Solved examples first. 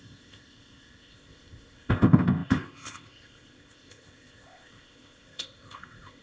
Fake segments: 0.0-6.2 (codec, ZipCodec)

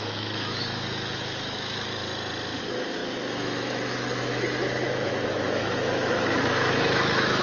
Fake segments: 0.0-2.0 (autoencoder, DAC-VAE); 2.6-7.4